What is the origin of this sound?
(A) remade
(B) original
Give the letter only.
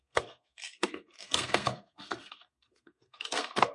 A